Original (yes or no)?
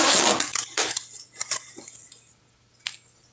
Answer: yes